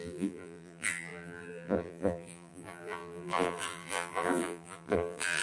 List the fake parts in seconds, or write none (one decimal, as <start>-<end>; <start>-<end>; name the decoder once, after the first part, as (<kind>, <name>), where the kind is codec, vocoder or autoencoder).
0.0-5.4 (vocoder, BigVGAN v2)